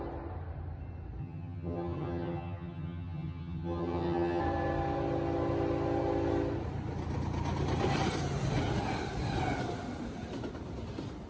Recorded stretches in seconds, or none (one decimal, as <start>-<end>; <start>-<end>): 0.0-1.2; 4.4-11.3